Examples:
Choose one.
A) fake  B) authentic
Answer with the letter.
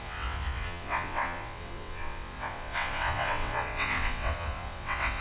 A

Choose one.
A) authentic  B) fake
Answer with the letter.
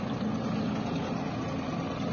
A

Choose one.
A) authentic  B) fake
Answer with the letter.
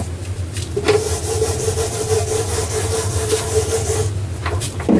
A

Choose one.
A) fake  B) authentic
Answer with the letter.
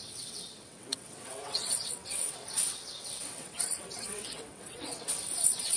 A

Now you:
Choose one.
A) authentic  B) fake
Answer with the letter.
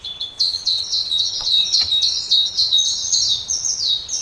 B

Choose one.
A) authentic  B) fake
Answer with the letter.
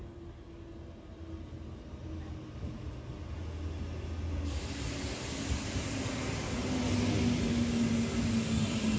A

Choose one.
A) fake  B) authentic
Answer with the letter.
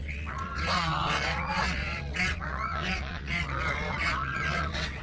A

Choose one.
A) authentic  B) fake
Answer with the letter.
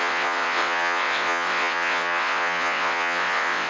B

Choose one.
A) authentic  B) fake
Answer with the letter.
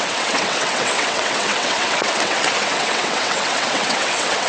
B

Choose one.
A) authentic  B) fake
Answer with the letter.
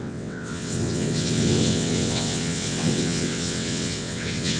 B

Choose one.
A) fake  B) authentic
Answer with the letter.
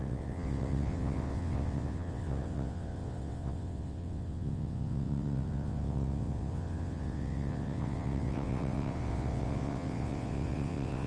A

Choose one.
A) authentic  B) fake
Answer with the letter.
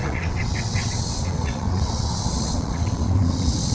B